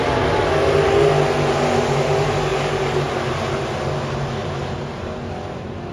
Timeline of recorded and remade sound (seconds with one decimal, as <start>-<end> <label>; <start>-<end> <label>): 0.0-2.5 recorded; 2.5-3.1 remade; 3.1-4.4 recorded; 4.4-5.1 remade; 5.1-5.9 recorded